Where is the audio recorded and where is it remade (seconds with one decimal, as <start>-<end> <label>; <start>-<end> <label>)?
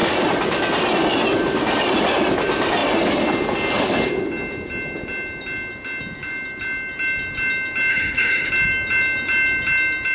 0.0-7.9 recorded; 7.9-8.5 remade; 8.5-10.1 recorded